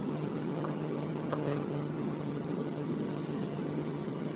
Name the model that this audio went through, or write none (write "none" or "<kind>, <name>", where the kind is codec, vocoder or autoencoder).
vocoder, HiFi-GAN